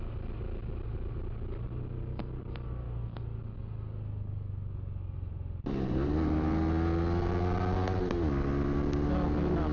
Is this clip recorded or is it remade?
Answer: recorded